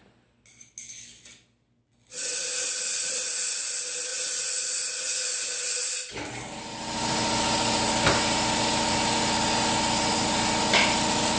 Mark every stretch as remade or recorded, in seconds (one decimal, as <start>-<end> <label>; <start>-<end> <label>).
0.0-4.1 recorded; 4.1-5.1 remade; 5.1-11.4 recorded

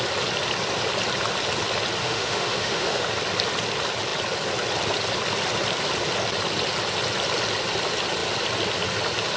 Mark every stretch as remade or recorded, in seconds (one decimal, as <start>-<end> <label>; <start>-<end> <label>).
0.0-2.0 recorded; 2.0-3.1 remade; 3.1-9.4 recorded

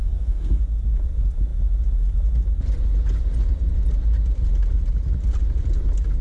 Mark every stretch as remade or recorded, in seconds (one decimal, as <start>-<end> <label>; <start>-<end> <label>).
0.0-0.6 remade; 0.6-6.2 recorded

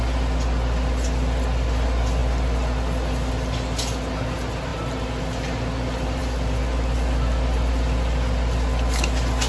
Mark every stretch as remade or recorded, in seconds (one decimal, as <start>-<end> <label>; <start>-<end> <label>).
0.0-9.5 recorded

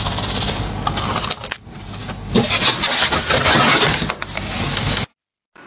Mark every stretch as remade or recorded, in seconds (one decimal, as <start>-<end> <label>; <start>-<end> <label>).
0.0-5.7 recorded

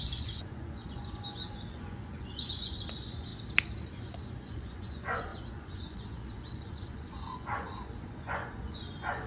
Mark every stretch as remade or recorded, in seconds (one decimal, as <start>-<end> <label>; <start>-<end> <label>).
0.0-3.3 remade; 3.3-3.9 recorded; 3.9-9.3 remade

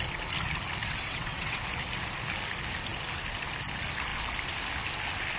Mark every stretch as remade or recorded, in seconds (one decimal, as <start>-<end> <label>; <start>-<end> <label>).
0.0-0.8 recorded; 0.8-1.6 remade; 1.6-5.4 recorded